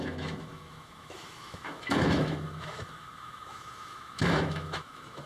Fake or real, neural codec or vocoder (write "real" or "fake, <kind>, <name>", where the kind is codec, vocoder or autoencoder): fake, autoencoder, DAC-VAE